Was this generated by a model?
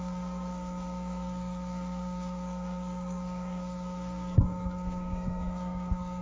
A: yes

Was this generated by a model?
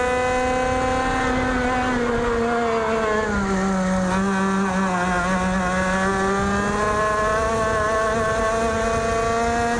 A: no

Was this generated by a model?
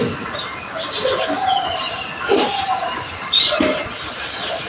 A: no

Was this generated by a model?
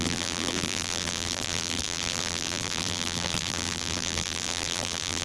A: yes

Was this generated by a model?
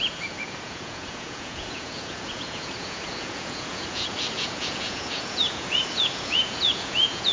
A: yes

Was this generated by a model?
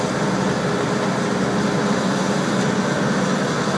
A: no